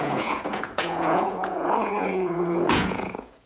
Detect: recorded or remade remade